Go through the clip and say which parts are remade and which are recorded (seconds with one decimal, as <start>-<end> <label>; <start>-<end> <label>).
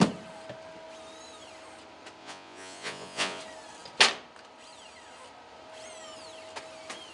0.0-2.2 recorded; 2.2-3.4 remade; 3.4-7.1 recorded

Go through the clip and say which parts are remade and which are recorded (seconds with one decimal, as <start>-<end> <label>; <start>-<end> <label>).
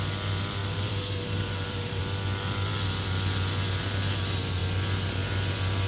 0.0-0.6 recorded; 0.6-2.0 remade; 2.0-5.9 recorded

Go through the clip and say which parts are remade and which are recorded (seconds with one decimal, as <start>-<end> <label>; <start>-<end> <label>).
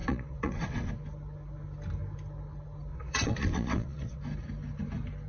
0.0-0.9 remade; 0.9-2.9 recorded; 2.9-4.2 remade; 4.2-5.3 recorded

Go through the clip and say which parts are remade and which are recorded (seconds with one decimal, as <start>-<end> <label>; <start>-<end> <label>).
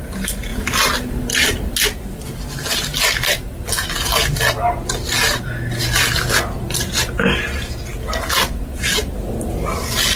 0.0-10.2 recorded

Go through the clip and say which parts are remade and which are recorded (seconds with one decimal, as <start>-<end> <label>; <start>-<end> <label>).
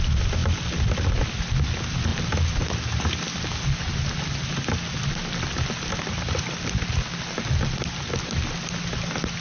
0.0-9.4 recorded